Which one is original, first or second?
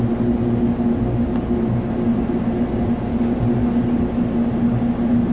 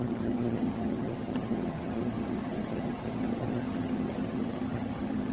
first